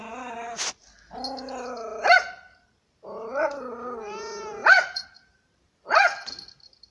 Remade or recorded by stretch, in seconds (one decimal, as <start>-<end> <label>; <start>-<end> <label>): 0.0-4.6 recorded; 4.6-6.3 remade; 6.3-6.9 recorded